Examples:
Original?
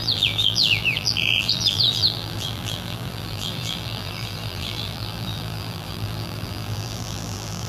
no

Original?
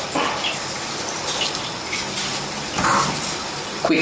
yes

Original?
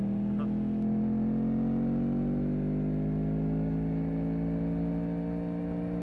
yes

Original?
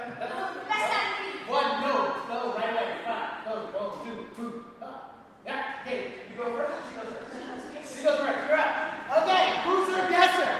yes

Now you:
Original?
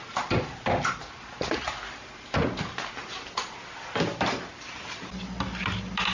yes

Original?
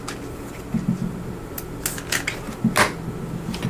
yes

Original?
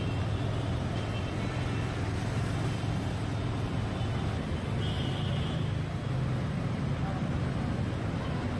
yes